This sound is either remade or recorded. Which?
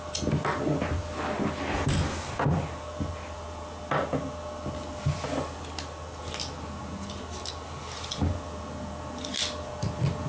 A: recorded